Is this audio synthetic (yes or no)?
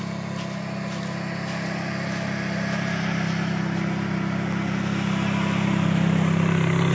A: no